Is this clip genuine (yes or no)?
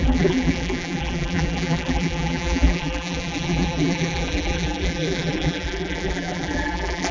no